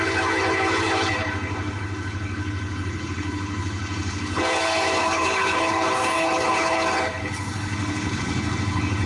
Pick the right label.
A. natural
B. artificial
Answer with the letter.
B